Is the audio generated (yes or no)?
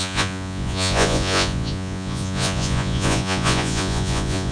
yes